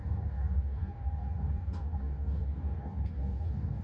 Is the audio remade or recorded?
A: remade